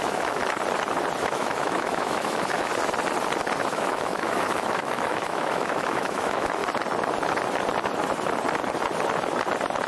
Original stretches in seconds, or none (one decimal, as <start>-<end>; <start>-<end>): 0.4-1.2; 2.7-3.7; 6.6-9.9

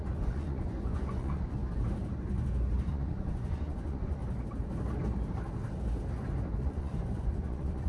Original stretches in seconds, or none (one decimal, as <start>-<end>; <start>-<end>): 1.6-2.9; 4.2-6.6

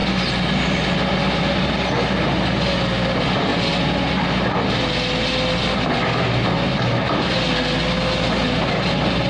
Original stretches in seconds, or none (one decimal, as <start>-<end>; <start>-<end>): 0.0-9.3